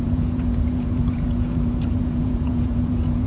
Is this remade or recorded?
remade